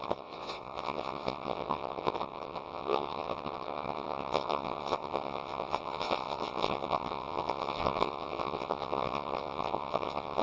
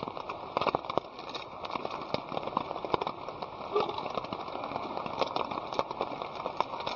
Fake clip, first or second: first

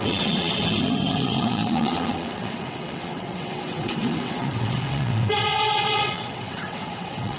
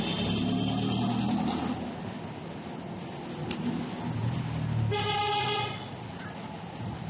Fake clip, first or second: first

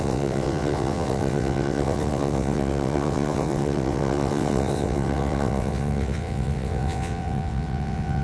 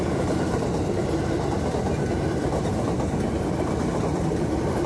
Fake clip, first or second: first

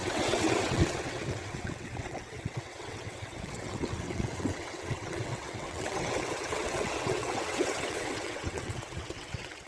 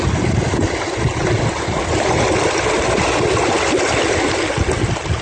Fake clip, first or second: first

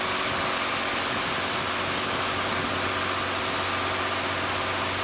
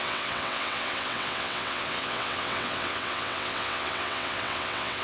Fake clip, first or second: second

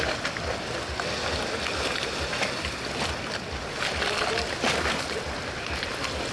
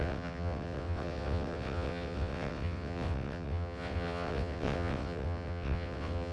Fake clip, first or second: second